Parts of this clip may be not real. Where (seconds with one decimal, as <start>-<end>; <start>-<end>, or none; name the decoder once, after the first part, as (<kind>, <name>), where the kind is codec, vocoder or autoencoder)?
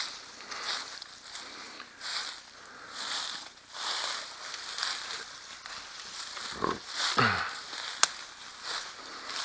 4.9-6.8 (vocoder, BigVGAN v2)